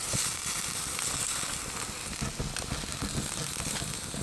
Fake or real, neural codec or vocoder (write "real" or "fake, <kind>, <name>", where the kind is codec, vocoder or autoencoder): real